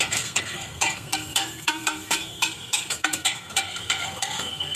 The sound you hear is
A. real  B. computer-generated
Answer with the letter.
B